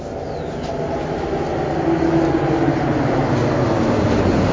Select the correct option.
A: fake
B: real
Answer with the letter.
B